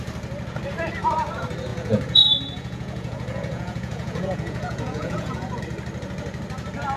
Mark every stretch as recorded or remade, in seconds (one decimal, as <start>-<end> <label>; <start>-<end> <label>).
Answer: 0.0-1.7 recorded; 1.7-5.6 remade; 5.6-7.0 recorded